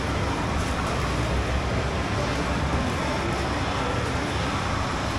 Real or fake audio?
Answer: real